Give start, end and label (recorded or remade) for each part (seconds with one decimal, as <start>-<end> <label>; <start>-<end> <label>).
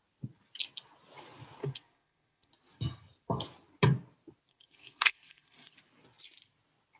0.0-1.6 recorded; 1.6-2.5 remade; 2.5-4.5 recorded; 4.5-5.7 remade; 5.7-7.0 recorded